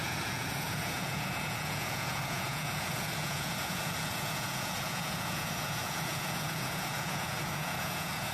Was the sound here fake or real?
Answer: fake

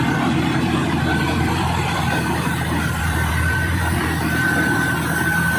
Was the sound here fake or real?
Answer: fake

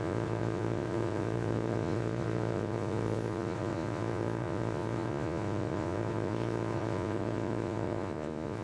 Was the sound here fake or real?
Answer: fake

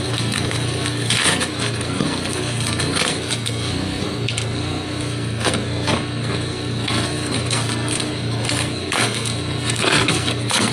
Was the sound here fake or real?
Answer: fake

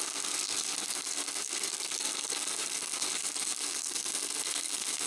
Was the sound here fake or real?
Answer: fake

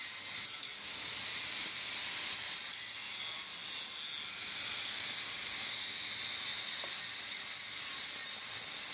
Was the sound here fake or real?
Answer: real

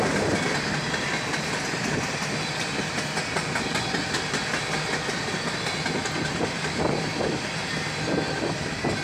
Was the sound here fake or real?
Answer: real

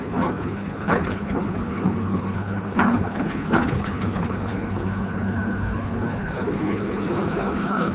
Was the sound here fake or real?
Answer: fake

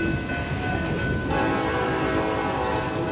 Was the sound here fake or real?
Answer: real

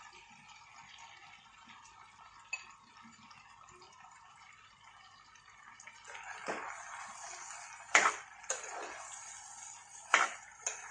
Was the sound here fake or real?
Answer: real